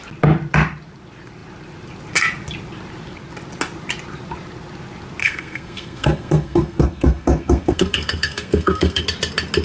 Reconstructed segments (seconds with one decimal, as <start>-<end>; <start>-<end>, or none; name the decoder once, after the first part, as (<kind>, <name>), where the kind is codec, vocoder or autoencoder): 5.2-9.0 (codec, SNAC)